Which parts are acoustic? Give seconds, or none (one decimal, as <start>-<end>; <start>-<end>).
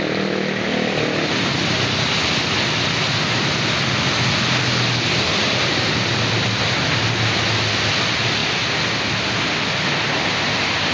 0.0-10.9